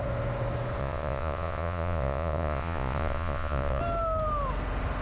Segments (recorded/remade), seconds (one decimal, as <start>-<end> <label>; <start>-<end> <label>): 0.0-0.8 recorded; 0.8-3.8 remade; 3.8-5.0 recorded